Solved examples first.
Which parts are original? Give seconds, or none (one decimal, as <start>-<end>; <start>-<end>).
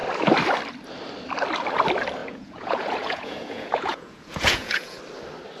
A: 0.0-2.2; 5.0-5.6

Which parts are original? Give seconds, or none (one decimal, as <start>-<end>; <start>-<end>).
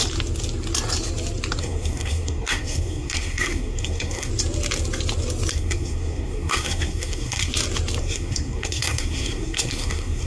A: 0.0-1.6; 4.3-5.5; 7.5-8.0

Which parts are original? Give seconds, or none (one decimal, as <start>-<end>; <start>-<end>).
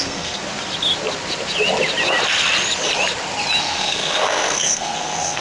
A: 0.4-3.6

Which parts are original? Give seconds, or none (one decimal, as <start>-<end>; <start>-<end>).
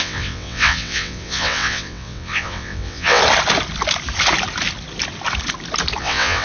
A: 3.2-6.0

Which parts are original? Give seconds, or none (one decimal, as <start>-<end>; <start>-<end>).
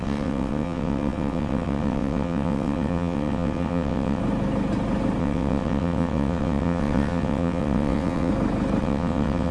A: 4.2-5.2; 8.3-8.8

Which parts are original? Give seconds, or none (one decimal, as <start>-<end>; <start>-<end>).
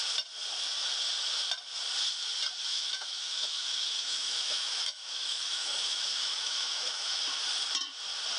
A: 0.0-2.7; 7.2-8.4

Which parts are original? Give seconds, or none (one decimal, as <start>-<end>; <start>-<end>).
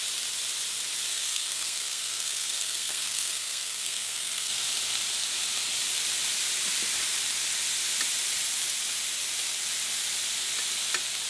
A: 0.0-1.1; 4.6-11.3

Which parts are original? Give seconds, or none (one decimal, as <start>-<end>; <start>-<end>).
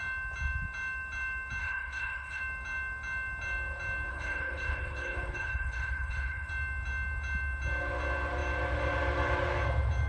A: 0.0-1.6; 2.4-4.1; 6.5-10.1